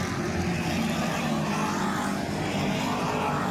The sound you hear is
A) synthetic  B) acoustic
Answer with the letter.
B